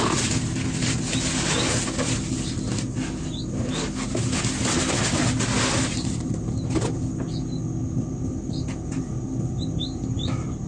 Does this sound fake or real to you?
real